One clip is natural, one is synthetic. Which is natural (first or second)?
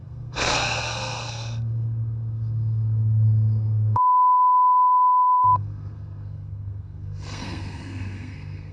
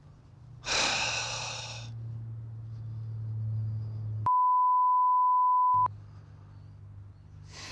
second